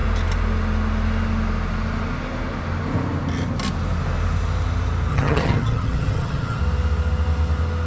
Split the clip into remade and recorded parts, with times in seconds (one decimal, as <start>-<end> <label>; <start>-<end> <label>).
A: 0.0-5.1 recorded; 5.1-6.6 remade; 6.6-7.9 recorded